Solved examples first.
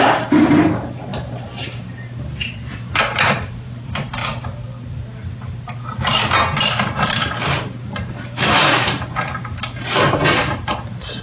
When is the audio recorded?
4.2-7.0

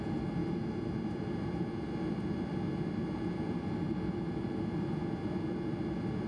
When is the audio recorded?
0.0-6.3

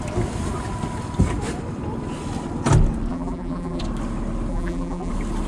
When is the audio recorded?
0.0-3.1; 3.8-4.5; 5.1-5.5

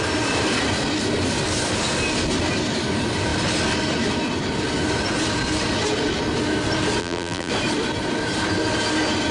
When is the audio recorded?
0.0-7.0; 7.5-9.3

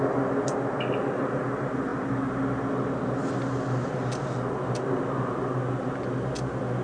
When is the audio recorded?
0.0-6.8

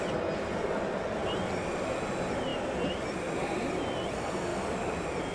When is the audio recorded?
0.0-1.2; 2.0-2.5; 3.7-4.5

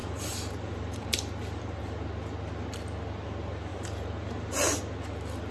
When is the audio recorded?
1.8-3.7; 4.8-5.5